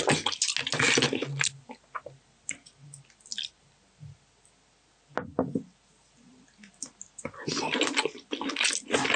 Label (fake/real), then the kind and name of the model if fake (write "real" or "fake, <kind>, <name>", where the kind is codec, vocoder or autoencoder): real